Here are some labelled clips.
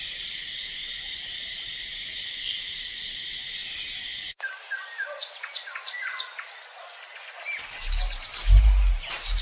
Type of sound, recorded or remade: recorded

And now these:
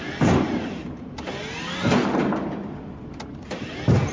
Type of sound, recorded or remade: recorded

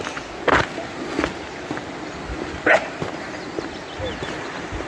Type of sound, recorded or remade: recorded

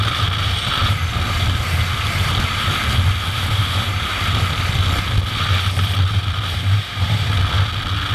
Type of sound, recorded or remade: recorded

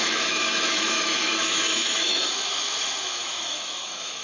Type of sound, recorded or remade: remade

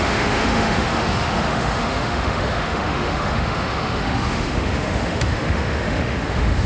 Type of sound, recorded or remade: remade